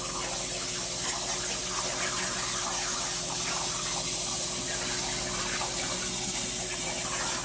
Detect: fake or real real